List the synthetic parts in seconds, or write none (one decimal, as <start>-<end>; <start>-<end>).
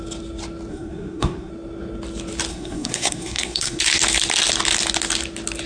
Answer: 0.7-1.5; 2.5-3.8